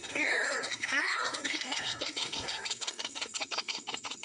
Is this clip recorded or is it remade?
remade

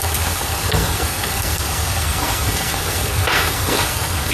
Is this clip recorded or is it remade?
remade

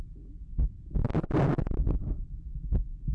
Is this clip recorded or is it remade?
recorded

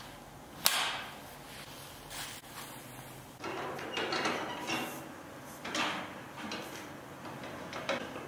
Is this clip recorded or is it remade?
recorded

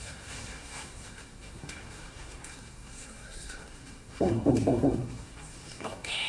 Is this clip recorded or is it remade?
remade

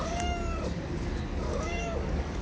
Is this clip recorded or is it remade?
remade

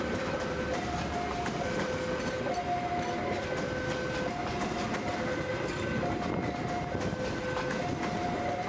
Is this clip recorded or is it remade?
recorded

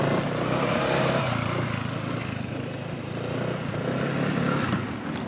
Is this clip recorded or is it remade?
recorded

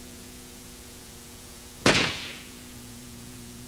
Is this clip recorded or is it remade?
remade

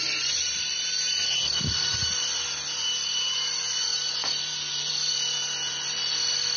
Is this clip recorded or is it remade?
remade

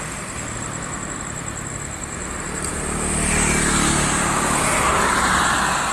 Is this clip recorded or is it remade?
recorded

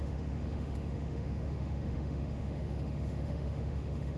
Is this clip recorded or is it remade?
remade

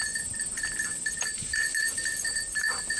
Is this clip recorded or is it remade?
recorded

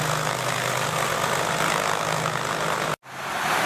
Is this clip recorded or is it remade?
recorded